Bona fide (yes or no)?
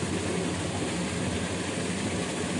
yes